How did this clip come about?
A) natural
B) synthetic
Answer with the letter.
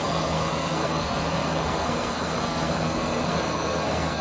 B